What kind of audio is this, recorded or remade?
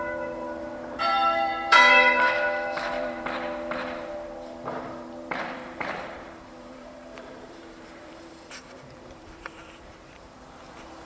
remade